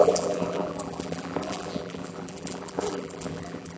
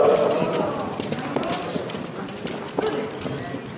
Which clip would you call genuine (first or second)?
second